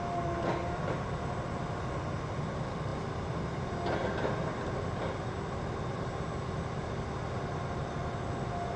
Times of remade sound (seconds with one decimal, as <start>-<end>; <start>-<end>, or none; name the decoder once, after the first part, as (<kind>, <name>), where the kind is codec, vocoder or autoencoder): none